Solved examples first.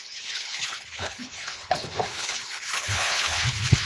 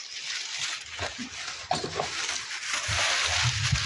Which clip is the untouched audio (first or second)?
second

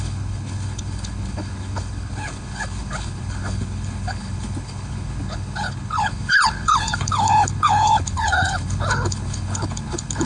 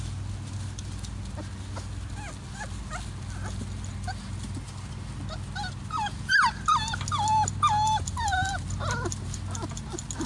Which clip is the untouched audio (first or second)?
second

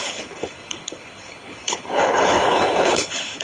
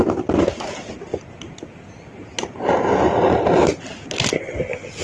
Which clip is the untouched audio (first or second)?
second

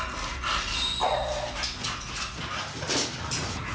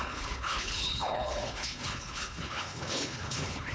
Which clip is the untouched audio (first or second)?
first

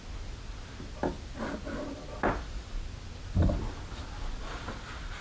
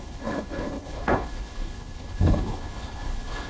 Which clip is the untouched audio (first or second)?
first